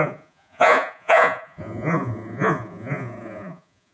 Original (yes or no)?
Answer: no